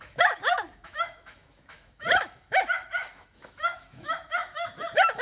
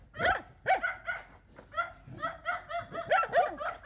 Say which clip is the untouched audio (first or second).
second